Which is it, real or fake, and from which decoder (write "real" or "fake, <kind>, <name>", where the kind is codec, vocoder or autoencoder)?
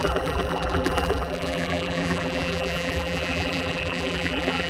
fake, vocoder, BigVGAN v2